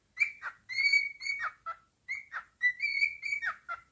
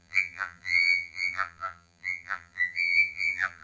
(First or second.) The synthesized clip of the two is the second